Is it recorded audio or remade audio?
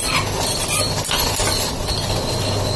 recorded